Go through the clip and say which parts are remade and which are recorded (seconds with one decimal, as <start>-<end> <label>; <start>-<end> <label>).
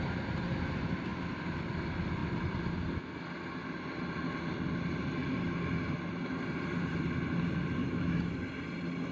0.0-7.8 recorded; 7.8-8.3 remade; 8.3-9.1 recorded